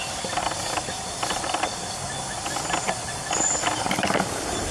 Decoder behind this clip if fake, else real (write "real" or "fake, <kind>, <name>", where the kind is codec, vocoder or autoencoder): real